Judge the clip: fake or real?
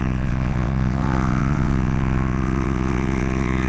fake